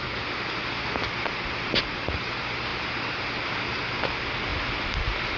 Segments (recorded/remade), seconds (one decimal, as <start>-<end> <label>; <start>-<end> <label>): 0.0-5.4 recorded